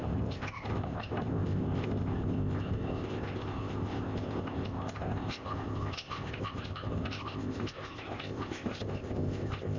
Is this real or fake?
fake